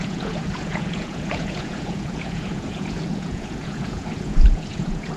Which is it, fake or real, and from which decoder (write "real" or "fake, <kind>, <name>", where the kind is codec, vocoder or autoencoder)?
fake, vocoder, Vocos